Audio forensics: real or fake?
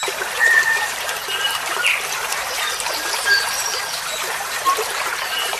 fake